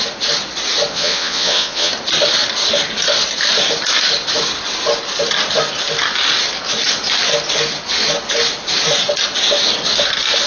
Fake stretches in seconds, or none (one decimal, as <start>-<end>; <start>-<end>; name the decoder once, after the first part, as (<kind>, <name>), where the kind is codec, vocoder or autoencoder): 0.9-1.9 (vocoder, Vocos)